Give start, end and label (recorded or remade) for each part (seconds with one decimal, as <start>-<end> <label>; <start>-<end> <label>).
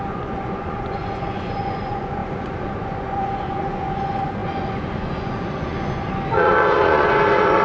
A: 0.0-7.6 remade